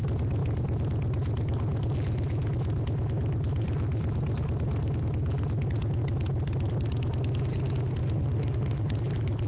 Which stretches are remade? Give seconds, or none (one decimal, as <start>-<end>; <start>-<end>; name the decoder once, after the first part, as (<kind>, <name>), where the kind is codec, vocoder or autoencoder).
8.0-9.0 (autoencoder, DAC-VAE)